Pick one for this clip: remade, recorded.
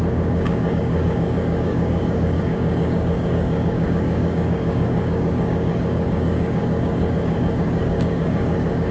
remade